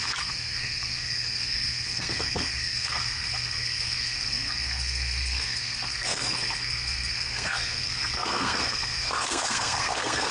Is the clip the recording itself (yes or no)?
no